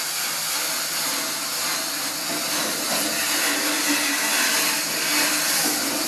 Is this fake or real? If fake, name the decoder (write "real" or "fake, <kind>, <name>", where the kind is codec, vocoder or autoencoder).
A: real